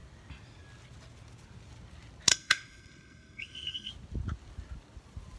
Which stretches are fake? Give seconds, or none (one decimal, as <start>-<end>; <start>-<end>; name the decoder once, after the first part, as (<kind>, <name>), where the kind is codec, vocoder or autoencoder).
2.3-3.9 (codec, SNAC)